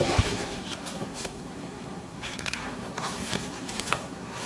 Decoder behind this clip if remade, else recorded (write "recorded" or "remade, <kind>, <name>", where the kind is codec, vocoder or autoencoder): remade, codec, SNAC